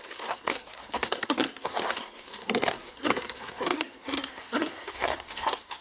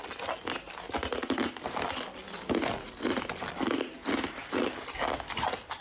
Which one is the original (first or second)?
second